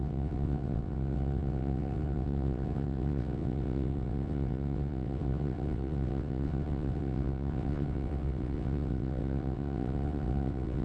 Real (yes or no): no